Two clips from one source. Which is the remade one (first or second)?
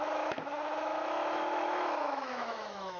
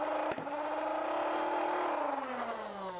first